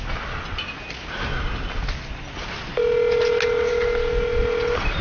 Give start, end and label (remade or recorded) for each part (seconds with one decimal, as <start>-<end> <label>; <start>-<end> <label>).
0.0-5.0 recorded